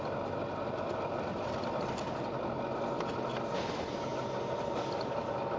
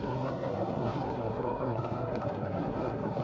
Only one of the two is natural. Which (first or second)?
first